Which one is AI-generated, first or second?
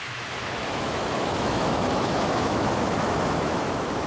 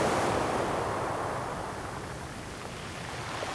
first